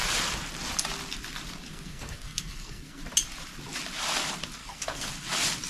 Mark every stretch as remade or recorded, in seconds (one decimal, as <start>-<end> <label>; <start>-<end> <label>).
0.0-1.7 recorded; 1.7-3.0 remade; 3.0-4.6 recorded; 4.6-5.1 remade; 5.1-5.7 recorded